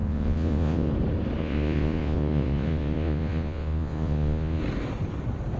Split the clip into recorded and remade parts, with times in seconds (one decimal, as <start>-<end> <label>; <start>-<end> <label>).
0.0-0.9 remade; 0.9-1.4 recorded; 1.4-4.6 remade; 4.6-5.6 recorded